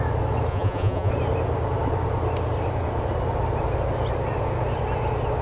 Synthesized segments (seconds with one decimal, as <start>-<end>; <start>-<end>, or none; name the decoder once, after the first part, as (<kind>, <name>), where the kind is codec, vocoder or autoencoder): 0.5-1.1 (vocoder, Vocos)